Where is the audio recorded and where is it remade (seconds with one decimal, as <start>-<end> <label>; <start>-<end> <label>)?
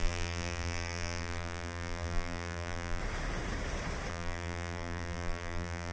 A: 0.0-3.0 remade; 3.0-4.1 recorded; 4.1-5.9 remade